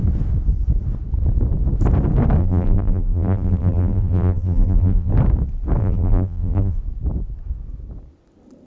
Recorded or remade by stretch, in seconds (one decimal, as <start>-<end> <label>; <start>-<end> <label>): 0.0-2.4 recorded; 2.4-5.1 remade; 5.1-5.8 recorded; 5.8-6.8 remade; 6.8-8.7 recorded